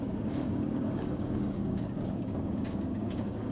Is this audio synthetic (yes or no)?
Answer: yes